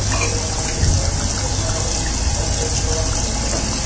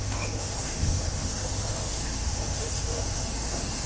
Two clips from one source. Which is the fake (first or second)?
second